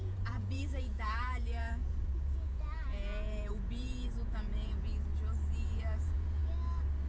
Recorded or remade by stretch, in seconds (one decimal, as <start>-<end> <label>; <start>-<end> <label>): 0.0-4.9 remade; 4.9-5.7 recorded; 5.7-6.4 remade; 6.4-7.1 recorded